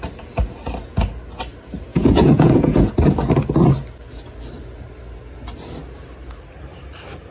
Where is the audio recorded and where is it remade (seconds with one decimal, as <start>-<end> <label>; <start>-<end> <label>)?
0.0-1.9 recorded; 1.9-2.9 remade; 2.9-7.3 recorded